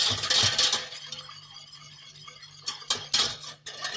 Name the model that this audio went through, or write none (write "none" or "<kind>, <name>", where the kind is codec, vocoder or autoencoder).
none